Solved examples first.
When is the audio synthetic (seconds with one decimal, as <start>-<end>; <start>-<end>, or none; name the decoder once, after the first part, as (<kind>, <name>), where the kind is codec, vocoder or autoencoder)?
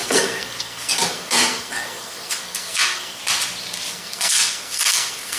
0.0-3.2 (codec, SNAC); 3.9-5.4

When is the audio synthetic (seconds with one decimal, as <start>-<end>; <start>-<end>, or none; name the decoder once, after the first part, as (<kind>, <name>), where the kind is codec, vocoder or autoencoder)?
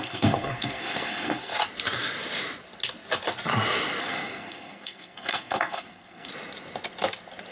0.0-1.5 (codec, SNAC); 4.0-6.3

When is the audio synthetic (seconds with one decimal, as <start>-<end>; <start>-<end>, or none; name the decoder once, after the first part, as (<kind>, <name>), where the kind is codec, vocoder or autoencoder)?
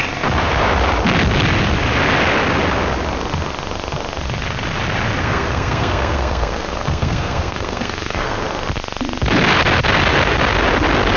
5.2-8.4 (codec, SNAC)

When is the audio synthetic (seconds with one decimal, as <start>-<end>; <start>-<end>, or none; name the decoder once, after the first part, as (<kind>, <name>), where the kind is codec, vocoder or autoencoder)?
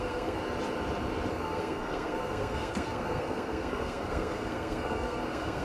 0.0-0.4 (codec, SNAC); 1.3-5.6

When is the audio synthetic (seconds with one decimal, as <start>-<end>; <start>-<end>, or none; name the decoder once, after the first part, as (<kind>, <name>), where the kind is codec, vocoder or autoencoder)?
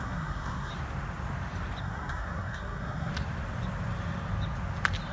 0.0-0.7 (codec, SNAC); 1.8-3.1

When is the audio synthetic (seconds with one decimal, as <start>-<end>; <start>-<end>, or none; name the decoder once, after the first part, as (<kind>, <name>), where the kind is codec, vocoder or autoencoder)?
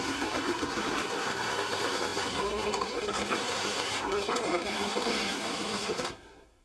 0.0-6.6 (codec, SNAC)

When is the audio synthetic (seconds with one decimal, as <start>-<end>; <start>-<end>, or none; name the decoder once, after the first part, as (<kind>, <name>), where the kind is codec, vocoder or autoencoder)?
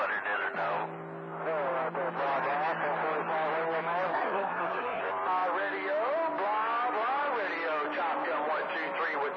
4.1-5.0 (codec, SNAC)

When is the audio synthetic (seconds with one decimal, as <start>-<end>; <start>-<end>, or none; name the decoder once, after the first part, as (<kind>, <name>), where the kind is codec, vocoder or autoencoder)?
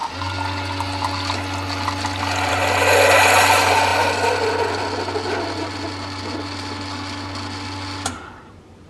none